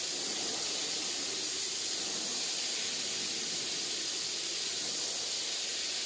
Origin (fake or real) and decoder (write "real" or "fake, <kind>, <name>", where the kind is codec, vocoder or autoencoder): real